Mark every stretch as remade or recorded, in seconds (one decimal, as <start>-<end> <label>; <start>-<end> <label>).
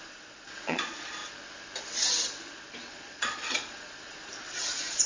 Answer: 0.0-1.2 remade; 1.2-2.9 recorded; 2.9-5.1 remade